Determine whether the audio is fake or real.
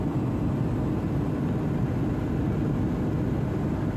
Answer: real